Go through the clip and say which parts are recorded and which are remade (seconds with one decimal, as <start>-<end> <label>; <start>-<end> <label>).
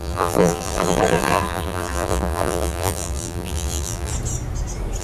0.0-4.1 remade; 4.1-5.0 recorded